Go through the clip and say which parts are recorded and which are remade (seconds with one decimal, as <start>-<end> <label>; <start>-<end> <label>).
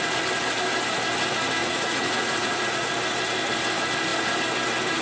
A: 0.0-1.6 recorded; 1.6-2.9 remade; 2.9-5.0 recorded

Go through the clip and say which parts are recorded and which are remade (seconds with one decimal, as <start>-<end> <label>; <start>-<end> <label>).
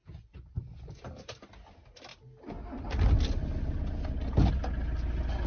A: 0.0-5.5 recorded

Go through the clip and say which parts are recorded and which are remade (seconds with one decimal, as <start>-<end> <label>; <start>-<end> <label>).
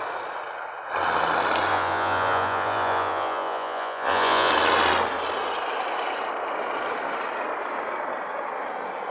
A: 0.0-1.7 recorded; 1.7-4.5 remade; 4.5-9.1 recorded